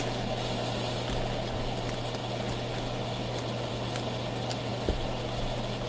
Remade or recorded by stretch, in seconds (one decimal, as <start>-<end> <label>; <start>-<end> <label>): 0.0-5.9 recorded